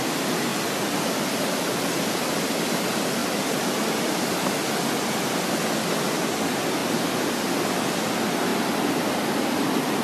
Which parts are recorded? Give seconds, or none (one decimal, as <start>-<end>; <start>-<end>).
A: 0.0-3.2; 5.3-10.0